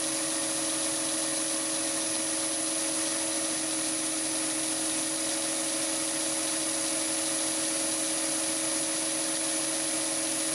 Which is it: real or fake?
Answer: real